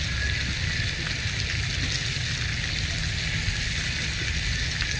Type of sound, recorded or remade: recorded